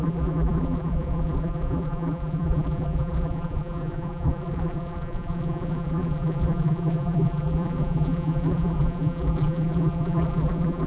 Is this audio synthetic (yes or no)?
yes